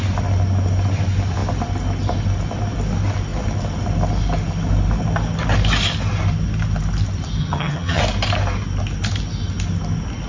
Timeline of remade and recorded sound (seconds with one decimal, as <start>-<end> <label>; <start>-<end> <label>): 0.0-7.4 recorded; 7.4-8.0 remade; 8.0-10.3 recorded